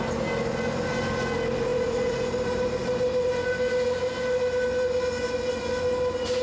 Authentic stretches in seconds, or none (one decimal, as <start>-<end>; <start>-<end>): 0.0-6.4